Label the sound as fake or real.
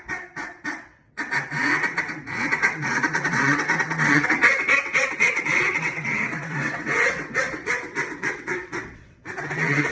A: fake